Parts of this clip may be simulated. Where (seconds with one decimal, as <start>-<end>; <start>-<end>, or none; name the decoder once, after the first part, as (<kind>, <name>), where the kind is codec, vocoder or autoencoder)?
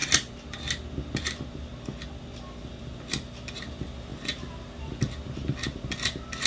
none